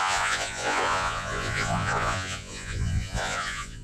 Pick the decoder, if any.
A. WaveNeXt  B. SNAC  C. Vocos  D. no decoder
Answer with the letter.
C